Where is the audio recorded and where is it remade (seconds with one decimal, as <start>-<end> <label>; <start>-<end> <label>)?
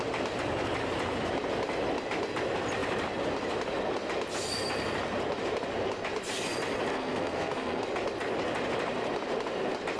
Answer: 0.0-6.9 recorded; 6.9-7.8 remade; 7.8-10.0 recorded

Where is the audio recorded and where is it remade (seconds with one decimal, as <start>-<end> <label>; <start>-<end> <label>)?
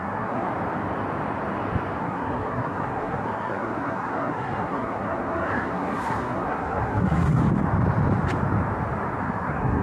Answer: 0.0-0.5 remade; 0.5-2.0 recorded; 2.0-7.4 remade; 7.4-9.2 recorded; 9.2-9.8 remade